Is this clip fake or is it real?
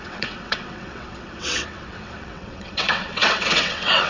fake